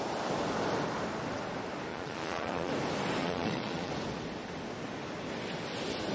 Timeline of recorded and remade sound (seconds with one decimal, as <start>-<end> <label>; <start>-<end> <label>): 0.0-1.9 recorded; 1.9-2.7 remade; 2.7-3.2 recorded; 3.2-3.9 remade; 3.9-6.1 recorded